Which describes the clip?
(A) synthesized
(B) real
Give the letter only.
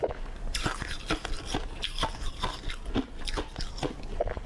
B